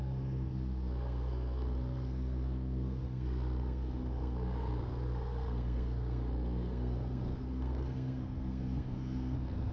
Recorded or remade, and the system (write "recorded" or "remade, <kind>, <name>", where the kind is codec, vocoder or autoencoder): remade, codec, SNAC